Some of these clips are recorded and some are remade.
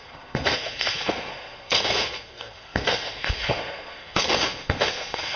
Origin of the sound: remade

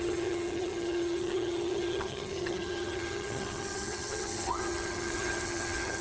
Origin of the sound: remade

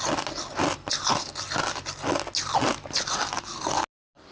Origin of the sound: recorded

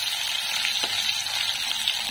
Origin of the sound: recorded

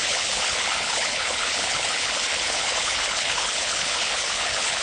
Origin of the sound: remade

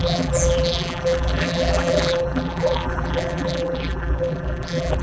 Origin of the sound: remade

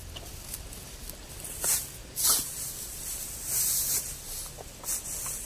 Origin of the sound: recorded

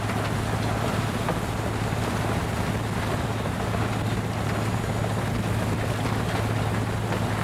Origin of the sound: recorded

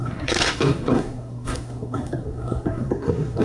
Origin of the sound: remade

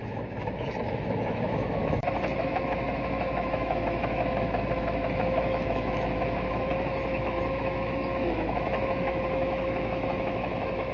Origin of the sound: remade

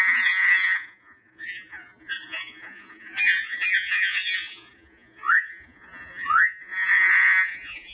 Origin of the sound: remade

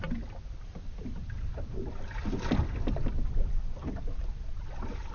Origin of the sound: recorded